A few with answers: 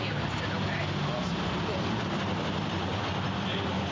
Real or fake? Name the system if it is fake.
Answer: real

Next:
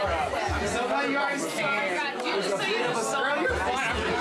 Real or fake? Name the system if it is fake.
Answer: real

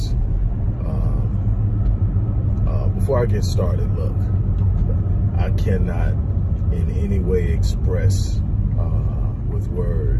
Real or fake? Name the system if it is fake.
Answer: real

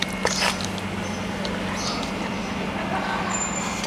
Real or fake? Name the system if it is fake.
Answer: real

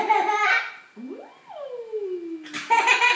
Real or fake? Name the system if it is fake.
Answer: real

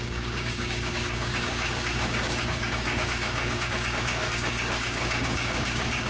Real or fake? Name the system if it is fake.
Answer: fake, codec, DAC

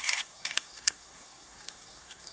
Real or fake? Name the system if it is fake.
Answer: fake, codec, SNAC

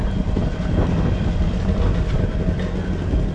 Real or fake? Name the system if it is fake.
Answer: real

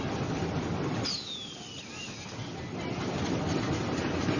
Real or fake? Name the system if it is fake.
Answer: real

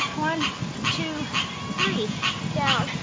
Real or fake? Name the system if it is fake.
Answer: real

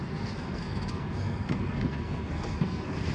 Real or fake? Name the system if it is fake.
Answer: fake, codec, SNAC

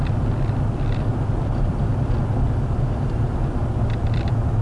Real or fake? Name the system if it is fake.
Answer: fake, vocoder, BigVGAN v2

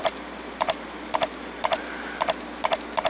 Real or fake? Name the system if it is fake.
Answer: real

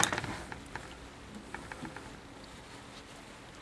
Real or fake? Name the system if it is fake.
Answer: real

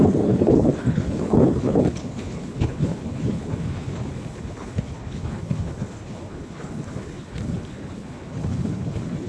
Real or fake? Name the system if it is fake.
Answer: fake, codec, HILCodec